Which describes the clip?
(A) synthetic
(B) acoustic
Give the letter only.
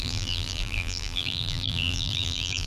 A